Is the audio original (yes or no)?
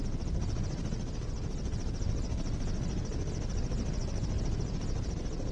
yes